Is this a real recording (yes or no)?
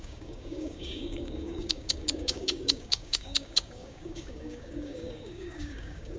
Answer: no